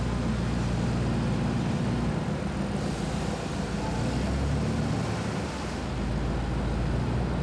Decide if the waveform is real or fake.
real